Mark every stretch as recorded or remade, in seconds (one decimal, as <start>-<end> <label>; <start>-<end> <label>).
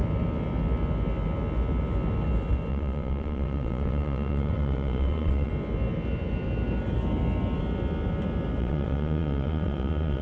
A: 0.0-2.7 recorded; 2.7-5.5 remade; 5.5-8.6 recorded; 8.6-10.2 remade